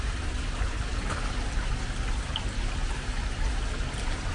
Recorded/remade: recorded